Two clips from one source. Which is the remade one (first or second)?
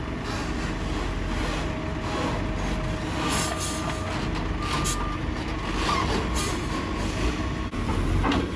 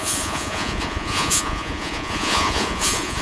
second